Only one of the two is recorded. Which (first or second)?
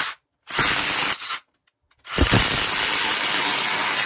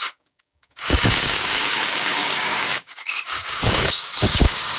first